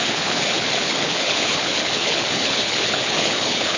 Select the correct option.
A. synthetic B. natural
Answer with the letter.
A